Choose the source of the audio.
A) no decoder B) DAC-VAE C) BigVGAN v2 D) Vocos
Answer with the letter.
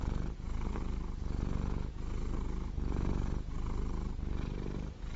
C